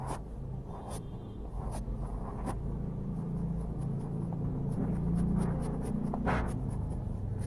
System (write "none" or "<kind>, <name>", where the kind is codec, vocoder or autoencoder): none